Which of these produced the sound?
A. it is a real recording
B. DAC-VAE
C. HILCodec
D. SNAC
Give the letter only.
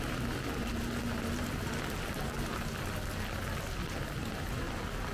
A